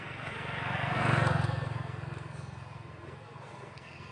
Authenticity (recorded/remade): remade